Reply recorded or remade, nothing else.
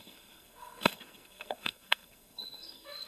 remade